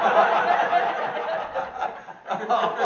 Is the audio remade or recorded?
recorded